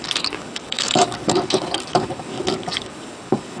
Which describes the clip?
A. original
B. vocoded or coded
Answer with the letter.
B